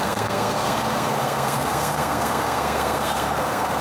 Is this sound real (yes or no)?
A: no